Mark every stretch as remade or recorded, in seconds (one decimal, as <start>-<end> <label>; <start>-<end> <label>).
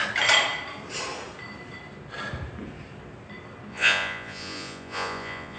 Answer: 0.0-3.7 recorded; 3.7-5.6 remade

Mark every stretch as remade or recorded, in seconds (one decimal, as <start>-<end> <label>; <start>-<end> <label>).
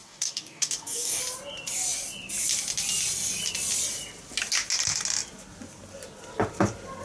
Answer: 0.0-1.2 remade; 1.2-7.0 recorded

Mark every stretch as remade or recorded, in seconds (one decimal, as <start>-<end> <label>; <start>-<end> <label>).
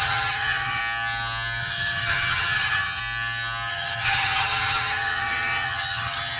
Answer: 0.0-0.8 remade; 0.8-1.6 recorded; 1.6-3.0 remade; 3.0-3.7 recorded; 3.7-6.4 remade